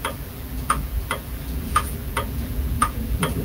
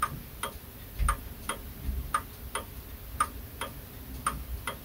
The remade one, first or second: first